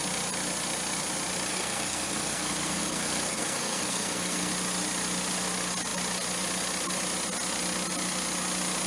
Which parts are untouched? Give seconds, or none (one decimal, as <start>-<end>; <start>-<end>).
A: 0.0-1.5; 4.5-8.9